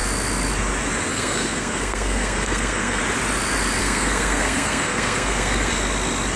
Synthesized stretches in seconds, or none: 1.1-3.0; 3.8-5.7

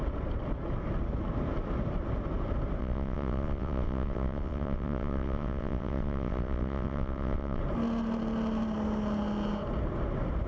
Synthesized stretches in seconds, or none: 2.8-7.6

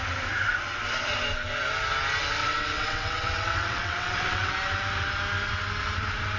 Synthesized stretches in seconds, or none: 2.4-4.5

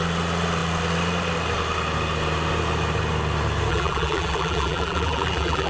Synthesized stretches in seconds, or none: 3.7-5.7